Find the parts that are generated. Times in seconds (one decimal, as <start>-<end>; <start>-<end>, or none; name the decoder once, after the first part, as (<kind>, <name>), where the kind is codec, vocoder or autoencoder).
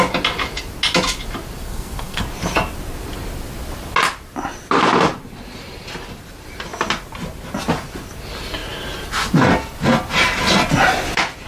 1.6-2.2 (codec, SNAC)